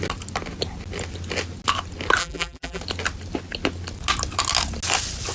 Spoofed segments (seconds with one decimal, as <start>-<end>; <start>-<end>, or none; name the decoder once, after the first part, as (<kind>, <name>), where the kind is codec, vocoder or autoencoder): 2.2-2.8 (vocoder, BigVGAN v2)